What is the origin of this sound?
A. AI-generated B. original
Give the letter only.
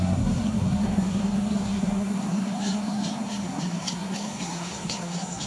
A